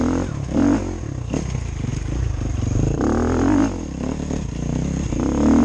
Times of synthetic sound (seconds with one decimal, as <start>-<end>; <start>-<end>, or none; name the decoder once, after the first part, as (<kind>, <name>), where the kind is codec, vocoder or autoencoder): none